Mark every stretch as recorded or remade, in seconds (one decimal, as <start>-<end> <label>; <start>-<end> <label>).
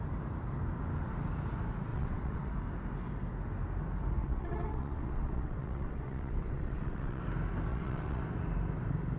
0.0-1.9 recorded; 1.9-2.5 remade; 2.5-4.2 recorded; 4.2-7.2 remade; 7.2-7.7 recorded; 7.7-8.2 remade; 8.2-9.2 recorded